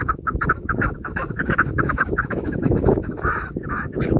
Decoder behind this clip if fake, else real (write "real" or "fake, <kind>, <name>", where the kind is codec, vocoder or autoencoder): fake, autoencoder, DAC-VAE